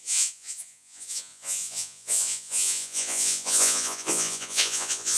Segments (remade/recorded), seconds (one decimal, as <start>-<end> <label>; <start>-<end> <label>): 0.0-5.2 remade

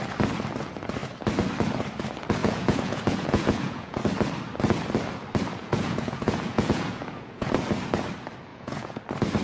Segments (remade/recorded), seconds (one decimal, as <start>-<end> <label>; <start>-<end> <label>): 0.0-2.4 recorded; 2.4-4.0 remade; 4.0-5.6 recorded; 5.6-7.5 remade; 7.5-8.5 recorded; 8.5-9.0 remade; 9.0-9.4 recorded

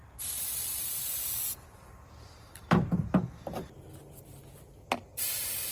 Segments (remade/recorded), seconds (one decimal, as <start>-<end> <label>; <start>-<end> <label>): 0.0-3.4 remade; 3.4-5.7 recorded

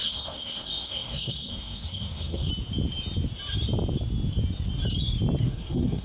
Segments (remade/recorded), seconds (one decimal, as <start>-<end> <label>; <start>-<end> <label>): 0.0-2.5 remade; 2.5-5.4 recorded; 5.4-6.0 remade

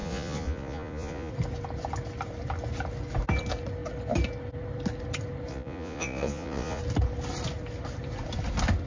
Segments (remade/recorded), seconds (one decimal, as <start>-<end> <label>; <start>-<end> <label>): 0.0-1.3 remade; 1.3-5.5 recorded; 5.5-6.8 remade; 6.8-8.9 recorded